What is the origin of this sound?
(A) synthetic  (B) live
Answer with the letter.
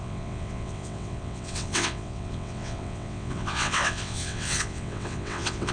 A